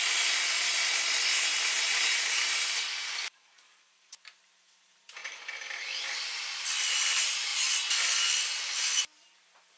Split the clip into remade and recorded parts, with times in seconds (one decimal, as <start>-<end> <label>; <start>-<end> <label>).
0.0-5.2 remade; 5.2-6.6 recorded; 6.6-9.8 remade